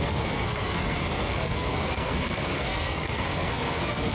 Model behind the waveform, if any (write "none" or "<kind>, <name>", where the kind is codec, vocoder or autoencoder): codec, SNAC